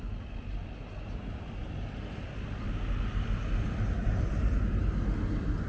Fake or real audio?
real